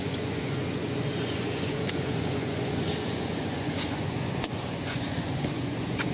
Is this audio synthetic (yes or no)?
yes